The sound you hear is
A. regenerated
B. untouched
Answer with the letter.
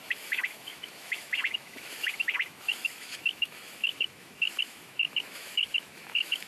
A